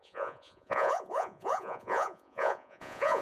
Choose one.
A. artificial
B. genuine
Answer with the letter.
A